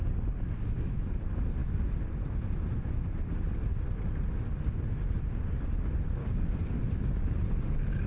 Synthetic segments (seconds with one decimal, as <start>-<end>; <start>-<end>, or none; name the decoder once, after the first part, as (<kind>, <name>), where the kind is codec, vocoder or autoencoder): 6.2-6.8 (codec, DAC)